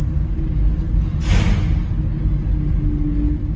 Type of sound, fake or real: real